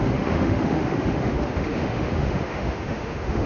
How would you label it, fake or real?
fake